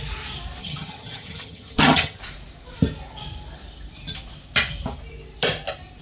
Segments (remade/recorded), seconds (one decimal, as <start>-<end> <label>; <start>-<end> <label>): 0.0-0.6 recorded; 0.6-2.2 remade; 2.2-6.0 recorded